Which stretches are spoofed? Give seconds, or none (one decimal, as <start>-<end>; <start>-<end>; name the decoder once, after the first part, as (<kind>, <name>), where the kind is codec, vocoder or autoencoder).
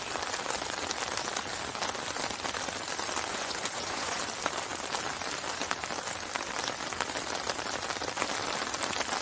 3.3-4.2 (vocoder, Vocos)